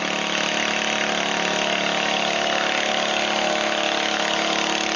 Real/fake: real